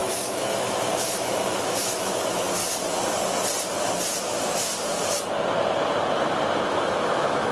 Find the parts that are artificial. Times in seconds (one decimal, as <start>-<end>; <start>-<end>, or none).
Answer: 0.0-2.6; 6.7-7.5